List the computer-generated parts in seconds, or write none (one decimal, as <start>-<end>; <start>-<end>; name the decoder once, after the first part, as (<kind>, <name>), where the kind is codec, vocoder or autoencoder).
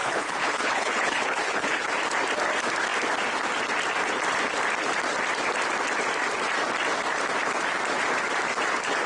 0.0-1.9 (codec, HILCodec)